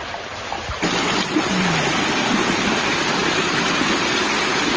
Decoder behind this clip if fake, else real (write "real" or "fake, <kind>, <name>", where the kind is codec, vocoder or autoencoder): real